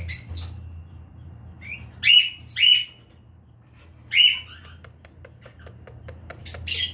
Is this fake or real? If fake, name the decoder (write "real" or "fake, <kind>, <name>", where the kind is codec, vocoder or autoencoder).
real